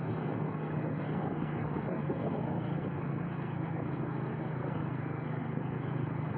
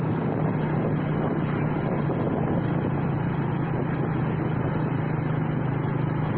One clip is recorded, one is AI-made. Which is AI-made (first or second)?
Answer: first